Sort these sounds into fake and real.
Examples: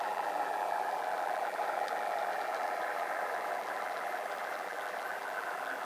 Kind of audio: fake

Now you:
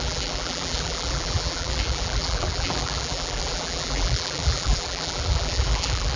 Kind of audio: fake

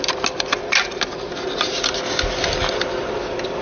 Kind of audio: real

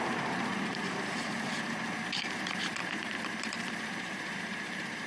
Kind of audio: fake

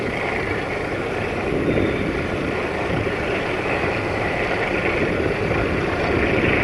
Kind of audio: fake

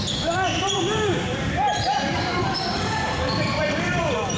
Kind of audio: fake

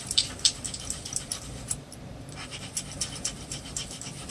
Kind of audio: fake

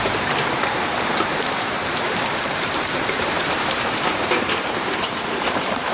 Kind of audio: fake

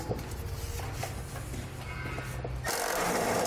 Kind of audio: fake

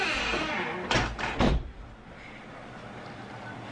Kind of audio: real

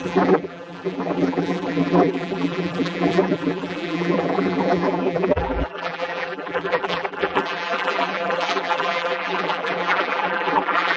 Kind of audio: fake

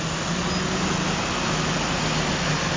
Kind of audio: real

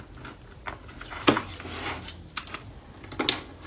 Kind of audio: real